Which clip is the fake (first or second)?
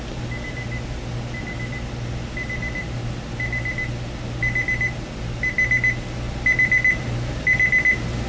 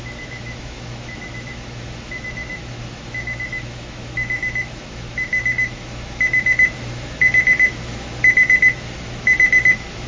second